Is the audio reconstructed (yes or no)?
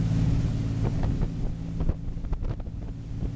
no